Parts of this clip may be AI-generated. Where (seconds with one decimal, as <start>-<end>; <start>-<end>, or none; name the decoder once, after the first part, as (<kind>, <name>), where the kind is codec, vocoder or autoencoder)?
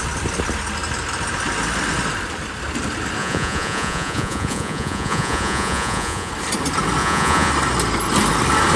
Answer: 3.2-6.3 (vocoder, Vocos); 7.0-7.5